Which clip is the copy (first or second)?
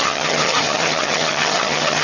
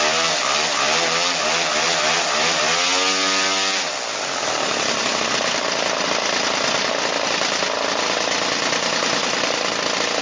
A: first